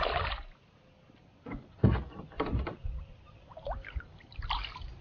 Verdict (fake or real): real